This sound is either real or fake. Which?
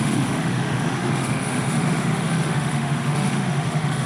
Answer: fake